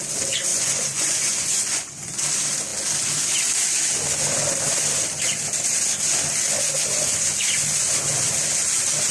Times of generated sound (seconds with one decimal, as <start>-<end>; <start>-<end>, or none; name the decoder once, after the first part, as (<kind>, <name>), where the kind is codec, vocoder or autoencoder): 0.5-2.2 (vocoder, Vocos)